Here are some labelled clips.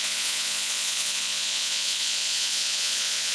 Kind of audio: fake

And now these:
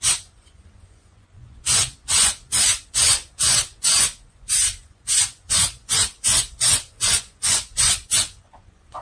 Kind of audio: fake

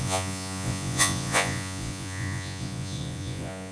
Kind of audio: fake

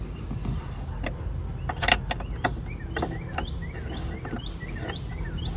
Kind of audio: real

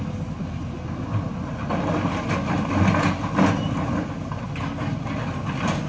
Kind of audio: real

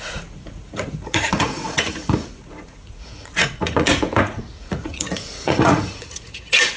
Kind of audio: fake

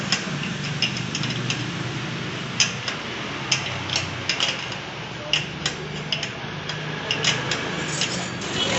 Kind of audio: real